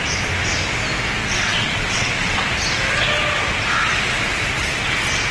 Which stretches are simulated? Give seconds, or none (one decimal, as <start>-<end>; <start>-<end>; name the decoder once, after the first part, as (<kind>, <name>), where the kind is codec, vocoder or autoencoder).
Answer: 1.2-2.4 (vocoder, WaveNeXt)